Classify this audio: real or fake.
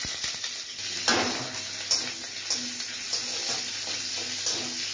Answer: real